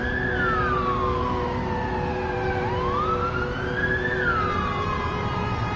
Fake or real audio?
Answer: real